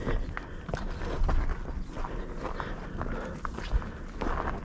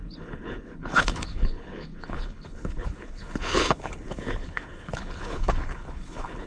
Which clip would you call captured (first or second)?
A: first